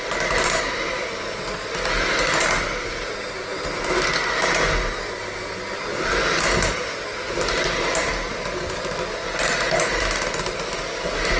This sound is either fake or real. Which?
real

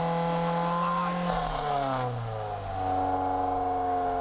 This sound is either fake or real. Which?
real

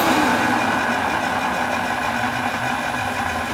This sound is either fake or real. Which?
real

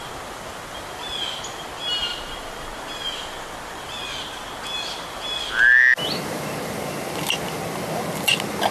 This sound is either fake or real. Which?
real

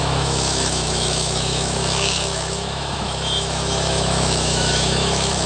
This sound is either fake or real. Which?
fake